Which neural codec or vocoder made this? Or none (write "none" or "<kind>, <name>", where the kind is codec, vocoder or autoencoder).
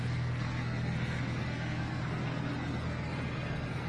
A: codec, SNAC